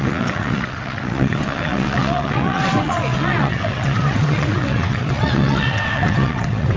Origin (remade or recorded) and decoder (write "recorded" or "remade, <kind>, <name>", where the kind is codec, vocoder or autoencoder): remade, vocoder, WaveNeXt